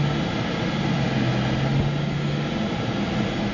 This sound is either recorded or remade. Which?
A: recorded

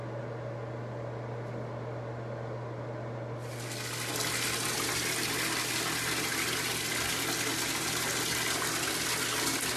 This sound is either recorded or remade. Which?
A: recorded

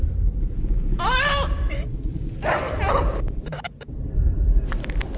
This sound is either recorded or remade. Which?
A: remade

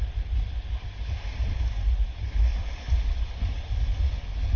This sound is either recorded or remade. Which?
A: recorded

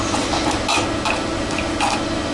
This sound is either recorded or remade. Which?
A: recorded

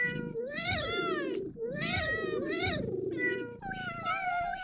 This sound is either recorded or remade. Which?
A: remade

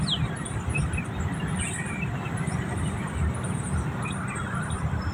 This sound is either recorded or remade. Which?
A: recorded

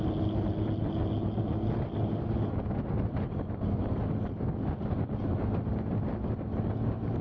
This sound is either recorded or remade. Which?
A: recorded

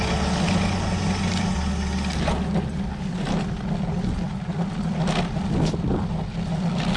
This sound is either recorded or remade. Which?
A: recorded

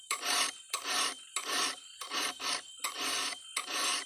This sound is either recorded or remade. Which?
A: remade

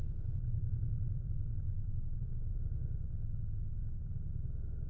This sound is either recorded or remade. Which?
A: remade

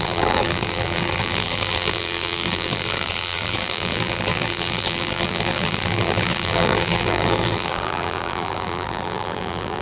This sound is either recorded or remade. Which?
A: remade